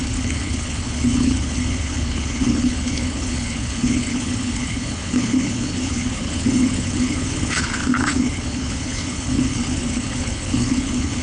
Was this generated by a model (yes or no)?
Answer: yes